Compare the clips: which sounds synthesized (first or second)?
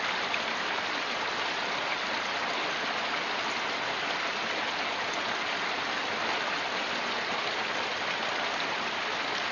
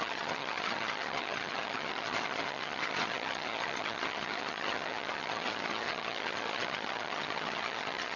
second